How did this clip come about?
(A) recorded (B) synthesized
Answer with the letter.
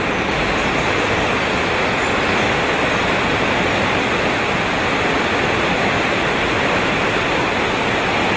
A